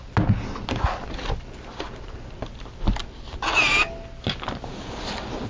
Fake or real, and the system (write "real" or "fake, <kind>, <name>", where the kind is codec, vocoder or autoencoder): real